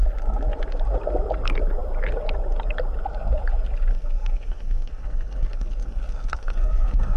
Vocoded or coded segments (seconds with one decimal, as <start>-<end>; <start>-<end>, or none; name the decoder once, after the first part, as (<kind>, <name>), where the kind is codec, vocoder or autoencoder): 3.9-7.2 (codec, SNAC)